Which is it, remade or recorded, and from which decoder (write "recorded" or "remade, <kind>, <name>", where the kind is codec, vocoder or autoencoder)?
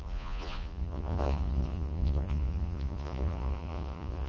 remade, vocoder, Vocos